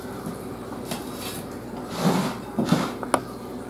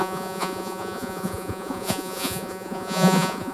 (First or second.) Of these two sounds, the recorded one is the first